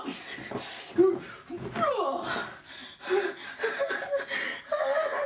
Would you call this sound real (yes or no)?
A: yes